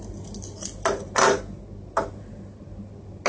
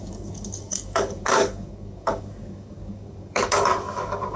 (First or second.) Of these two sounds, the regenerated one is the second